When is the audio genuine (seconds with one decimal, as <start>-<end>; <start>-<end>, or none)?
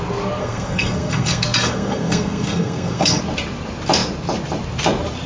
0.0-0.4; 3.2-5.3